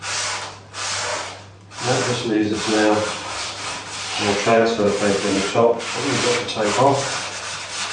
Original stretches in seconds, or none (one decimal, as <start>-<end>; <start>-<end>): 0.0-1.1; 5.8-7.9